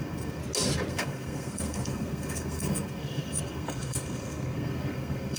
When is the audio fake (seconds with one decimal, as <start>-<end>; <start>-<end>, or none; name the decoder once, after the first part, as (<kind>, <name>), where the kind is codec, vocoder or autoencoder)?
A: 0.0-0.4 (codec, SNAC); 0.9-5.4